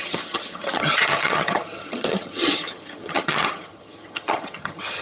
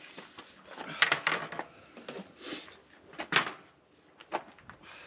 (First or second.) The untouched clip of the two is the second